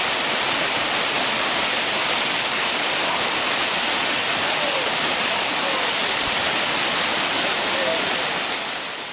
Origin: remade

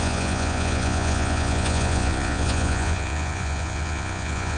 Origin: remade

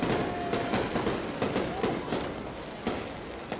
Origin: recorded